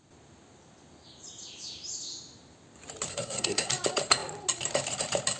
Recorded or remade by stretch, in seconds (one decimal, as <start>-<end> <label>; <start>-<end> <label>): 0.0-3.1 recorded; 3.1-3.7 remade; 3.7-5.4 recorded